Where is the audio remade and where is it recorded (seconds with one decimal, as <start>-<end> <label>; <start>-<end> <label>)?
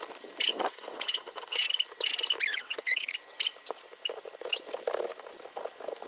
0.0-0.5 recorded; 0.5-1.7 remade; 1.7-2.5 recorded; 2.5-3.1 remade; 3.1-6.1 recorded